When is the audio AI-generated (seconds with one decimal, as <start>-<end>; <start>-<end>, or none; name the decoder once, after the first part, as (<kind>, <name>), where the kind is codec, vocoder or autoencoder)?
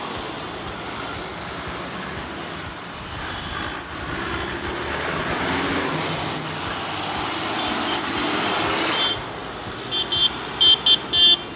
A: none